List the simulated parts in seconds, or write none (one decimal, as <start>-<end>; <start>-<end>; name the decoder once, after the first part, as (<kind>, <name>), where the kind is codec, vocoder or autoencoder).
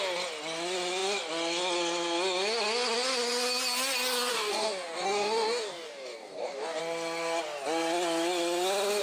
4.3-6.8 (codec, DAC)